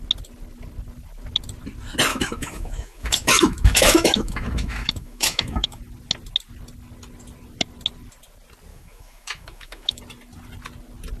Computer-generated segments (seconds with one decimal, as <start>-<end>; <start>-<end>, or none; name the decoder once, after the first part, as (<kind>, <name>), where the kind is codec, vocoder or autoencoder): 2.1-5.8 (autoencoder, DAC-VAE); 8.7-10.0